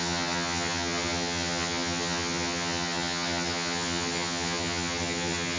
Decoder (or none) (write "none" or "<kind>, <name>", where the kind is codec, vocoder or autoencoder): vocoder, HiFi-GAN